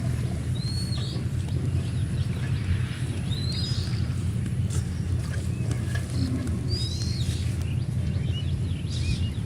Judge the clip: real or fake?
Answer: real